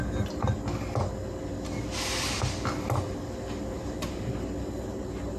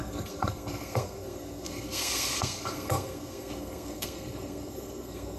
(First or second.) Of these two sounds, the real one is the first